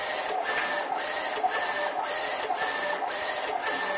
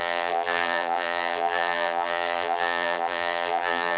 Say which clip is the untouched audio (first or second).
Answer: first